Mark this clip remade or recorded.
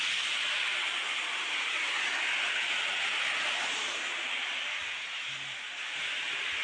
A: recorded